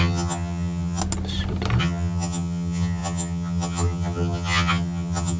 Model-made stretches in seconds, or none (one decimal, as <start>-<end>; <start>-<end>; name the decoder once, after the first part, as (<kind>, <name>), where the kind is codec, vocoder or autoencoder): 0.0-1.0 (vocoder, HiFi-GAN); 1.8-5.4